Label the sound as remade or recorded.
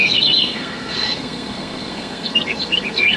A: remade